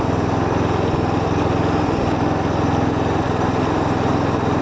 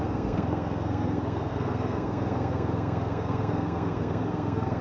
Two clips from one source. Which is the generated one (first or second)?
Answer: second